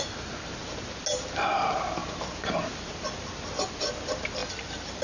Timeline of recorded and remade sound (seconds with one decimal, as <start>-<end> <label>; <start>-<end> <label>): 0.0-5.0 recorded